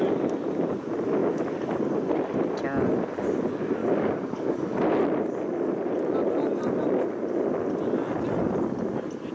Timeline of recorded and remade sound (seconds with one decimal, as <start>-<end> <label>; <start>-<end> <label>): 0.0-3.8 recorded; 3.8-4.8 remade; 4.8-9.3 recorded